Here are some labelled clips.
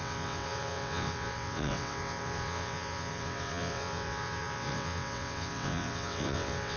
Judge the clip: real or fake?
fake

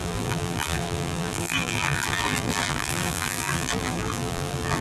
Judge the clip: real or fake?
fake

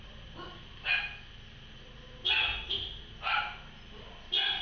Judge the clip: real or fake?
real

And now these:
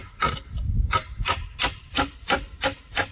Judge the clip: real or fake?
real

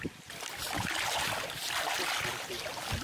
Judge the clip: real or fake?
fake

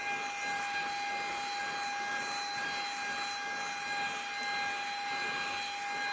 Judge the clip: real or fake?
real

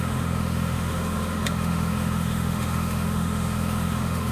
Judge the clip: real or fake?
fake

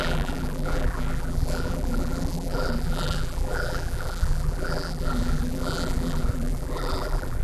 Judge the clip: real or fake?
fake